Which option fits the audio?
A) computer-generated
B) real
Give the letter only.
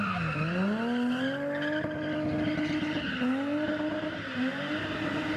B